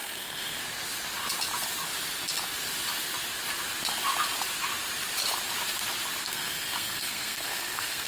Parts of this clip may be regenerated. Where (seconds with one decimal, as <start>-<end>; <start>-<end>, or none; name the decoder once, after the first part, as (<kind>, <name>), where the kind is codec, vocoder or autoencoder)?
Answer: 0.0-0.6 (codec, SNAC); 6.2-8.1